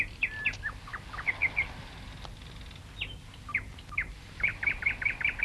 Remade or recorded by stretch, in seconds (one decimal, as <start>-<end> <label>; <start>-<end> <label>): 0.0-4.5 recorded; 4.5-5.4 remade